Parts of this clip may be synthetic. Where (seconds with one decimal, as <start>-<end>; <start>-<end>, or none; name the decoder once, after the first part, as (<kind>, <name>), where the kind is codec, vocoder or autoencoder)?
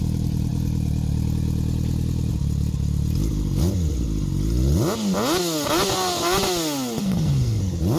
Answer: 7.0-7.6 (codec, SNAC)